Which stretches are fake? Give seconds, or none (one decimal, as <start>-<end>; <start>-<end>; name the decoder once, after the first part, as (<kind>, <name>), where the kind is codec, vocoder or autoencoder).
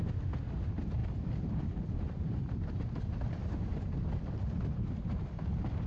1.0-2.8 (vocoder, BigVGAN v2)